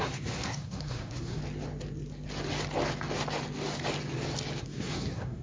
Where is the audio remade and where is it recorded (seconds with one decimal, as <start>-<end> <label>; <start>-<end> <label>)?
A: 0.0-1.4 remade; 1.4-4.6 recorded; 4.6-5.4 remade